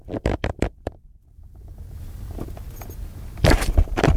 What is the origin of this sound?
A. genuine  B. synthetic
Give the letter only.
B